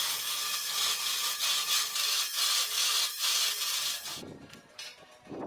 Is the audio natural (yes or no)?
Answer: no